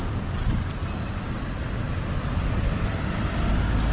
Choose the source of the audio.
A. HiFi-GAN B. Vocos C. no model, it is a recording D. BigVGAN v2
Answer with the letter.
C